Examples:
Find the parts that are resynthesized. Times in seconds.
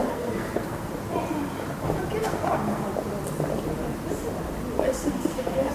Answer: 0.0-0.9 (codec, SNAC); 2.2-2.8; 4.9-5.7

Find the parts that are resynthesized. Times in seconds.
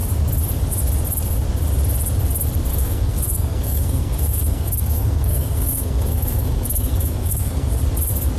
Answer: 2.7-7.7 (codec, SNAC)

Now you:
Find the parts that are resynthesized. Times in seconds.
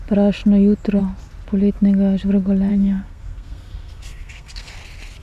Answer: 2.7-4.7 (codec, SNAC)